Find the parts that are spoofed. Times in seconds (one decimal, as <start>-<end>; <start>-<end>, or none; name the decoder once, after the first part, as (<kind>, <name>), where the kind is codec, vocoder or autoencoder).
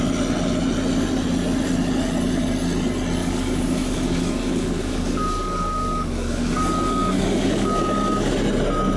3.2-8.3 (codec, DAC)